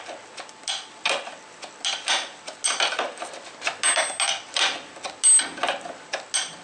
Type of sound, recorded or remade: recorded